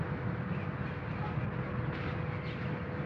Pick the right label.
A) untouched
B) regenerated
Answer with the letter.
A